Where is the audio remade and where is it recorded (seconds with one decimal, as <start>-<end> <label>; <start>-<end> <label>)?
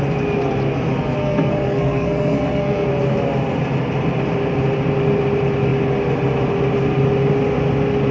0.0-1.2 recorded; 1.2-2.9 remade; 2.9-8.1 recorded